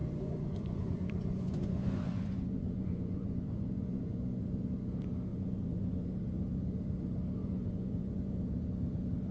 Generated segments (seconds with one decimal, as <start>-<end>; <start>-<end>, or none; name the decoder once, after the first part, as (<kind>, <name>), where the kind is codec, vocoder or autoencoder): 0.0-4.4 (vocoder, Vocos); 5.3-6.1; 7.4-8.4